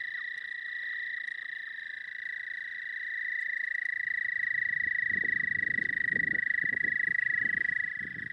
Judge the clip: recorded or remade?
recorded